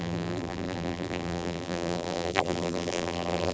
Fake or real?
fake